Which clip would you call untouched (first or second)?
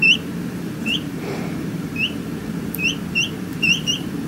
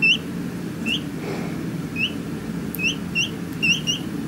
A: second